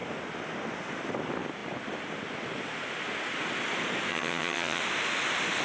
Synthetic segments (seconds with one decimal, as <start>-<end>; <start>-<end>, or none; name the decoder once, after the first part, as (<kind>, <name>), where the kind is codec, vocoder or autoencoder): 4.1-4.8 (vocoder, HiFi-GAN)